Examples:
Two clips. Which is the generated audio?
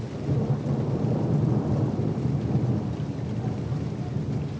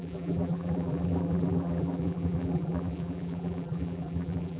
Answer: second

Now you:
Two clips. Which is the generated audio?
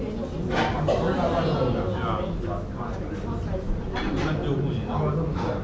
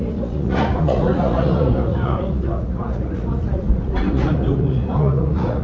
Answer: second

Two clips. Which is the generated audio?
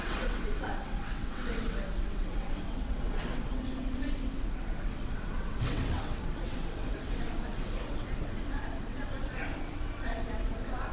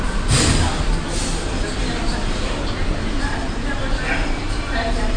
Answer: first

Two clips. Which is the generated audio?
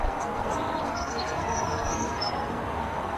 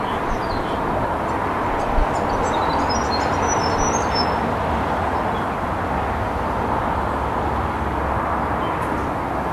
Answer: first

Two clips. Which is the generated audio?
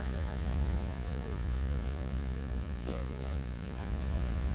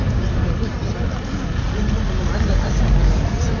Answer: first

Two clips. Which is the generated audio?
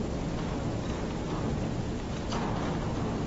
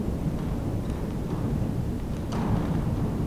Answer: second